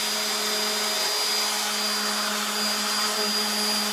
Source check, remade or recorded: recorded